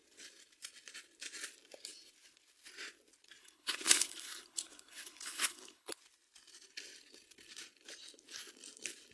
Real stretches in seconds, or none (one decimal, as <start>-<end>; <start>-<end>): 0.0-3.4; 6.0-9.1

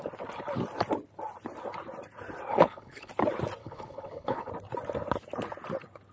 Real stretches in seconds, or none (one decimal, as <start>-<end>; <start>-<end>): 0.0-2.5; 3.1-3.6; 4.5-6.1

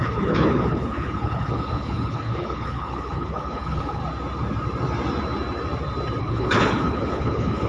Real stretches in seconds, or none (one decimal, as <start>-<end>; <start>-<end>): 4.0-6.2

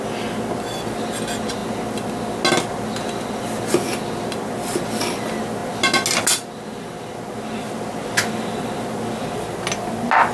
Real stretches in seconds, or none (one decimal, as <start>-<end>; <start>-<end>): 0.0-10.3

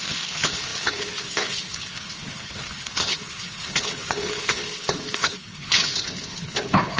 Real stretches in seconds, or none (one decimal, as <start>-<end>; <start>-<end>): none

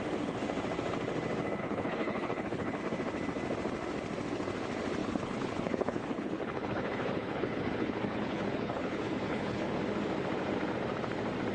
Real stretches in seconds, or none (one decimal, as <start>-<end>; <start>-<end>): 0.0-1.6; 2.8-5.0; 9.8-11.5

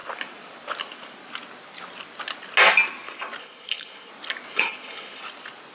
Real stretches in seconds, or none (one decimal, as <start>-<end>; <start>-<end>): 0.0-3.4; 4.1-4.5; 5.2-5.7